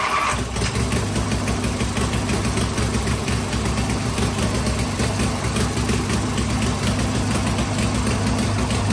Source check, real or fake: real